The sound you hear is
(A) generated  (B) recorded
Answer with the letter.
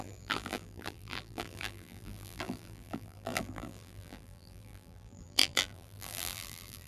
A